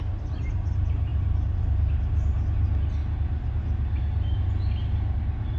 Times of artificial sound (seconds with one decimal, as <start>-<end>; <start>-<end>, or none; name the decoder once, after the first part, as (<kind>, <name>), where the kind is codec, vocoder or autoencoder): none